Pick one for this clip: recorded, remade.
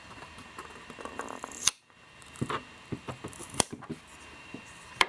remade